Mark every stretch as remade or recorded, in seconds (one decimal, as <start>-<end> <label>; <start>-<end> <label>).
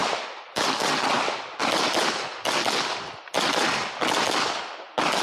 0.0-5.2 recorded